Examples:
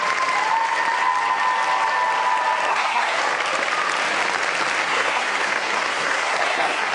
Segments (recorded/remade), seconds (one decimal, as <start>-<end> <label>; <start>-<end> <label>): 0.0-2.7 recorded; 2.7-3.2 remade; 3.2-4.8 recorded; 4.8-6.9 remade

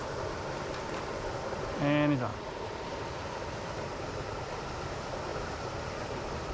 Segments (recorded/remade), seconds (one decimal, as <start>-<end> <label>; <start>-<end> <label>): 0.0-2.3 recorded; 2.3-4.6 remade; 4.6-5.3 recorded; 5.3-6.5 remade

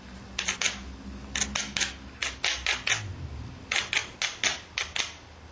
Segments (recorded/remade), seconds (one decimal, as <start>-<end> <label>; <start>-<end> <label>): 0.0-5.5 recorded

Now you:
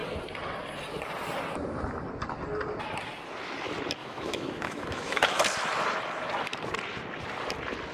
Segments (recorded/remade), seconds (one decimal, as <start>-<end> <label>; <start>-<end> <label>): 0.0-4.0 recorded; 4.0-5.4 remade; 5.4-7.9 recorded